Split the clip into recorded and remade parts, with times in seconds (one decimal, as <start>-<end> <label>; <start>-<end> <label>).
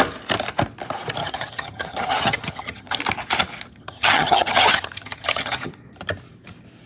0.0-1.2 recorded; 1.2-3.0 remade; 3.0-3.7 recorded; 3.7-5.7 remade; 5.7-6.9 recorded